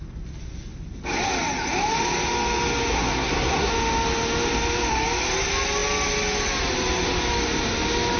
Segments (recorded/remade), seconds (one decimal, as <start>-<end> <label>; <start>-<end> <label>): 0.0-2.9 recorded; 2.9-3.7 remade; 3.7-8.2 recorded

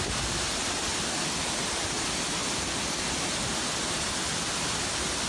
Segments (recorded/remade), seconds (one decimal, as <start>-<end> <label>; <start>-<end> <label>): 0.0-5.3 recorded

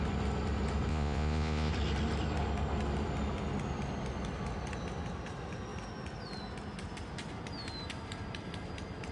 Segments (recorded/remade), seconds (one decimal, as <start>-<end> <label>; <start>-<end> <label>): 0.0-0.9 recorded; 0.9-1.7 remade; 1.7-9.1 recorded

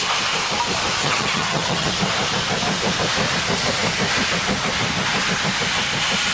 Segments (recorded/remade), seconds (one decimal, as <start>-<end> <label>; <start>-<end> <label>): 0.0-1.0 recorded; 1.0-1.9 remade; 1.9-6.3 recorded